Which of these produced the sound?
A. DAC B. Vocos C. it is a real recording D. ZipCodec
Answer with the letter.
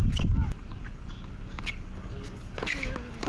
A